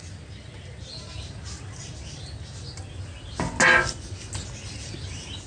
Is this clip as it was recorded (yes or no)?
yes